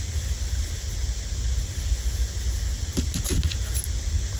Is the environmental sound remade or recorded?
recorded